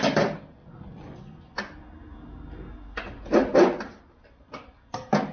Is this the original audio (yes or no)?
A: yes